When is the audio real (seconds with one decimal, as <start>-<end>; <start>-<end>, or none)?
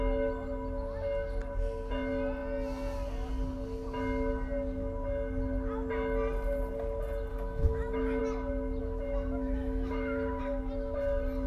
0.0-7.3; 8.2-8.8; 10.4-11.5